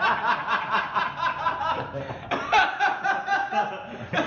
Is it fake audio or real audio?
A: real